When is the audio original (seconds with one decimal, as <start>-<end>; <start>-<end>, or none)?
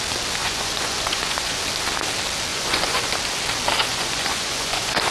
0.0-0.4; 1.6-2.5; 3.1-3.9